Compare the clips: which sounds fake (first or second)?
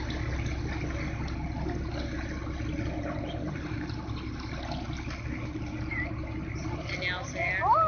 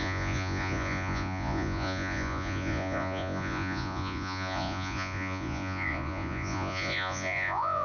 second